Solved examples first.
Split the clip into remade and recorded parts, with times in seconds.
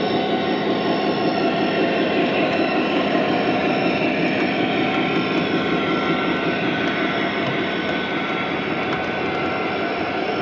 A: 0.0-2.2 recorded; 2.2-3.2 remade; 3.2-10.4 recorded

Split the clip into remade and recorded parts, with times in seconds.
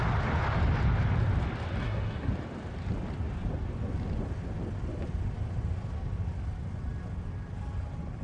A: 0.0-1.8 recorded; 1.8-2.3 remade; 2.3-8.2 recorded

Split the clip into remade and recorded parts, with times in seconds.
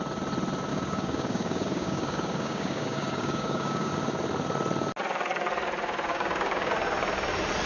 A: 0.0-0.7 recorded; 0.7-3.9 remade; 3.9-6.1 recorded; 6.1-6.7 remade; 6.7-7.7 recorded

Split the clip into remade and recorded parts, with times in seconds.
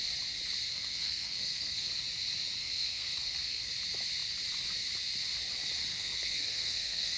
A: 0.0-0.7 recorded; 0.7-1.9 remade; 1.9-2.6 recorded; 2.6-3.7 remade; 3.7-5.9 recorded; 5.9-7.2 remade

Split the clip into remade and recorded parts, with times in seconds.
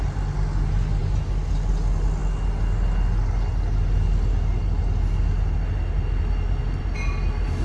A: 0.0-7.6 recorded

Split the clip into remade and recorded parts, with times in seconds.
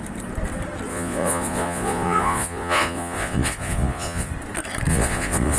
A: 0.0-0.9 recorded; 0.9-4.3 remade; 4.3-4.9 recorded; 4.9-5.6 remade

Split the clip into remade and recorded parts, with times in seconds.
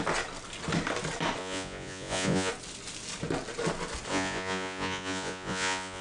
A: 0.0-1.4 recorded; 1.4-2.5 remade; 2.5-4.1 recorded; 4.1-6.0 remade